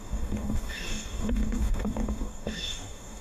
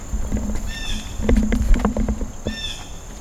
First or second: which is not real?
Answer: first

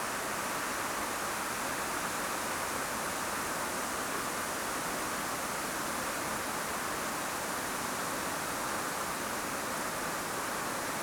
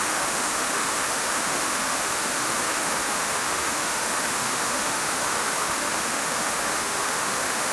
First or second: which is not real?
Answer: second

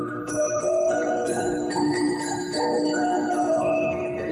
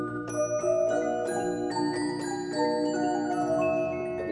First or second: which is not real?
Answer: first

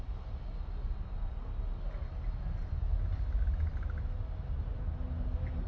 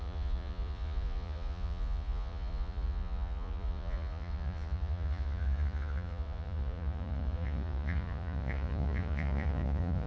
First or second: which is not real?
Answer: second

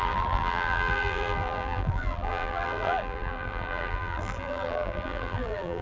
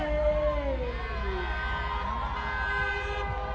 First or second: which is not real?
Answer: first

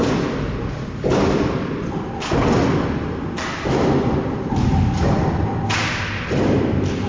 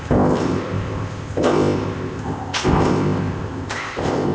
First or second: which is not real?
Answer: second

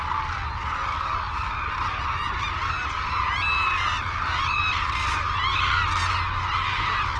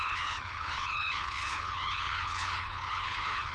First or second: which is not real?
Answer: second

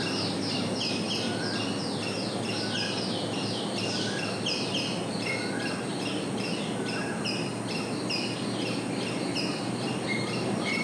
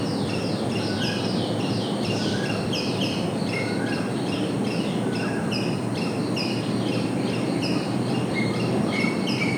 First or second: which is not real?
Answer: second